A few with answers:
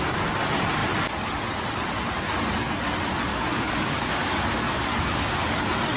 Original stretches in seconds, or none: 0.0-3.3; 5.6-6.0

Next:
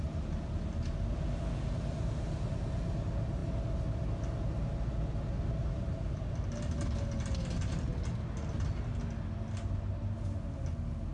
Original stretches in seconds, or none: 0.0-11.1

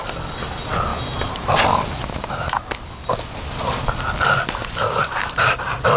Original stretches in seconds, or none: 0.0-6.0

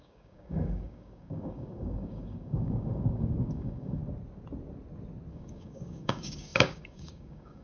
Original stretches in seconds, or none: 4.0-5.3

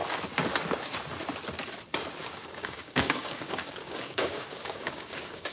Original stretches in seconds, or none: 0.0-2.2

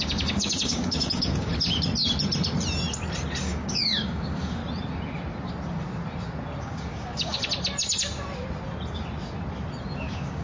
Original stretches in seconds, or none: 1.5-3.4; 4.6-6.6; 7.4-10.0

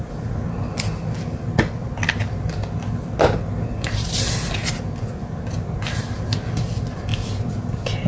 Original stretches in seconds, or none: 0.0-8.1